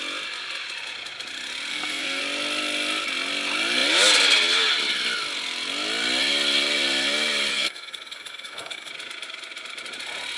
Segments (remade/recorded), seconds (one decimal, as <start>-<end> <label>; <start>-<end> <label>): 0.0-1.7 recorded; 1.7-2.2 remade; 2.2-7.5 recorded; 7.5-8.9 remade; 8.9-10.4 recorded